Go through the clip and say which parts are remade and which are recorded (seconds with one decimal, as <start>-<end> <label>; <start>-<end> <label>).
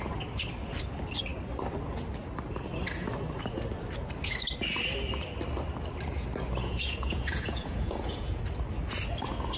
0.0-6.6 recorded; 6.6-8.4 remade; 8.4-9.6 recorded